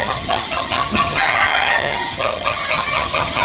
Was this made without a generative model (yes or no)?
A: no